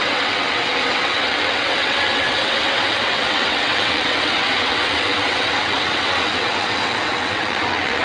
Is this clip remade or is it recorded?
remade